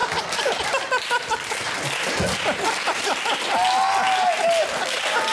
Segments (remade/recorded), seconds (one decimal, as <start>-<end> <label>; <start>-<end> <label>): 0.0-5.3 recorded